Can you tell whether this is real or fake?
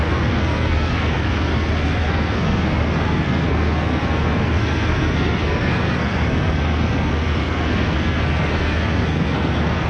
fake